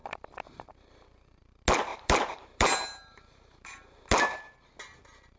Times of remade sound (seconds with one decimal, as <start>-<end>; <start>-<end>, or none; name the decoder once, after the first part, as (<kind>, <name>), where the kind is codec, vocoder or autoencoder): 1.9-4.0 (vocoder, BigVGAN v2)